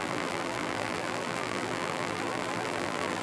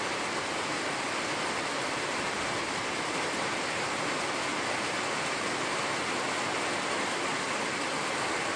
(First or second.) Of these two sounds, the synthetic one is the first